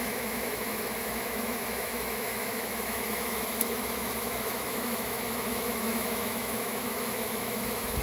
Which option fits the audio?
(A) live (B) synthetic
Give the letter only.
B